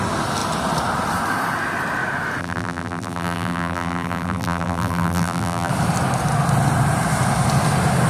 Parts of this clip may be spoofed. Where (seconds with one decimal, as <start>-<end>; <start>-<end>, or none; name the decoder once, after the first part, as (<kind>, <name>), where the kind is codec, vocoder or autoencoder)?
2.4-5.7 (vocoder, BigVGAN v2)